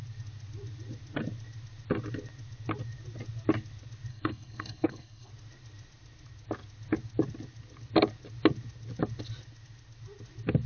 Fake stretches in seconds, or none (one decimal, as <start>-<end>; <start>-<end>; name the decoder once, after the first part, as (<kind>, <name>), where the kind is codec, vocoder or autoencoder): 4.1-5.3 (codec, SNAC)